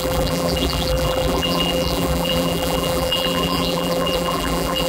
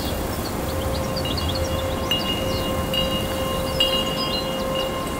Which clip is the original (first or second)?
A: second